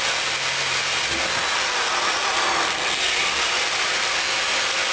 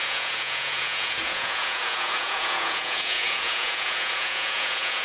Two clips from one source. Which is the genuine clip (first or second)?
first